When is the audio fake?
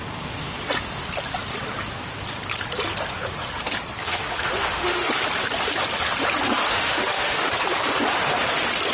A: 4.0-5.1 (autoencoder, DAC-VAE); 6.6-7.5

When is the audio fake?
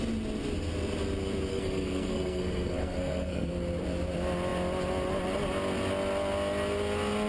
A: 1.5-3.5 (codec, SNAC)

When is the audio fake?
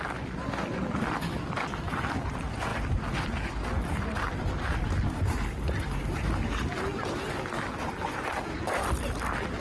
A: none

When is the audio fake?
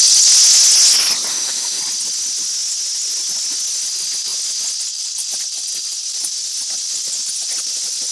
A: 1.3-1.8 (autoencoder, DAC-VAE)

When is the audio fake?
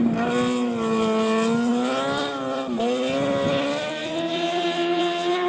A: 4.0-5.0 (vocoder, BigVGAN v2)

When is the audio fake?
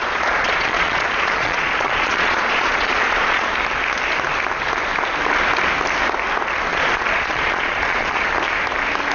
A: 0.0-3.5 (vocoder, Vocos); 6.7-8.3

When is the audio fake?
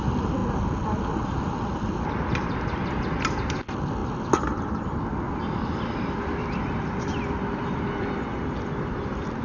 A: 4.0-8.6 (vocoder, BigVGAN v2)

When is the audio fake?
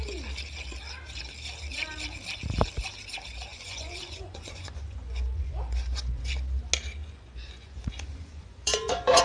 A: 3.5-6.3 (vocoder, Vocos); 7.0-9.2